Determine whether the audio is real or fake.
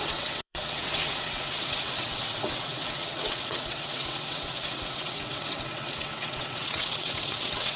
fake